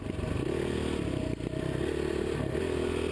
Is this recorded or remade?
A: recorded